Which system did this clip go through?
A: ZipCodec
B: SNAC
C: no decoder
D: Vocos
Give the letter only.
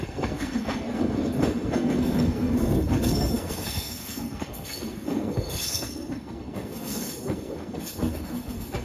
B